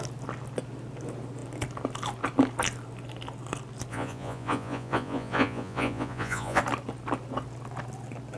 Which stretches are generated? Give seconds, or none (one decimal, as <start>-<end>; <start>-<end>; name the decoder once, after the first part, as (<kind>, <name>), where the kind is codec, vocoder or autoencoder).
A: 3.9-6.6 (vocoder, Vocos)